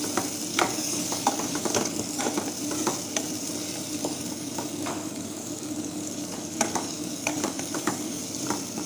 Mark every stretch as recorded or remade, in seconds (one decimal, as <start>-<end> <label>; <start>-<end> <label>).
0.0-0.5 recorded; 0.5-2.2 remade; 2.2-4.0 recorded; 4.0-8.2 remade; 8.2-8.9 recorded